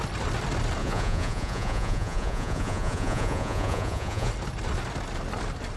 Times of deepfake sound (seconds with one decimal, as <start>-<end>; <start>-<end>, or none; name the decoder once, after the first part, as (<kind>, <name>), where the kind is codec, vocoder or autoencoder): 0.8-4.3 (vocoder, Vocos)